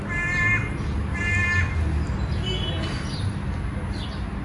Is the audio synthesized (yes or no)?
no